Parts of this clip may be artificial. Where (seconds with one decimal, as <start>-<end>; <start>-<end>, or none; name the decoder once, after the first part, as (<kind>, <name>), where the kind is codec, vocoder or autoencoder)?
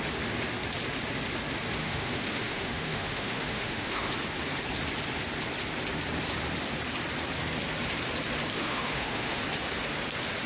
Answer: 1.8-4.1 (autoencoder, DAC-VAE); 8.5-9.4